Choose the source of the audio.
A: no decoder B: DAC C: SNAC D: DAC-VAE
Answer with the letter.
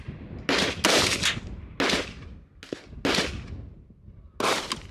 A